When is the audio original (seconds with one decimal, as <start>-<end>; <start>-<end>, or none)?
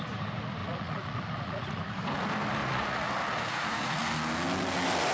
0.0-0.6; 1.8-2.6; 3.1-3.5; 4.0-5.1